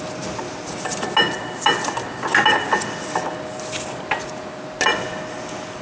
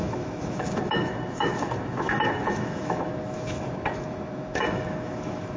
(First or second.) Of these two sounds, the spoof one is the second